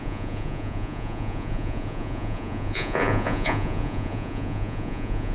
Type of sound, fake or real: fake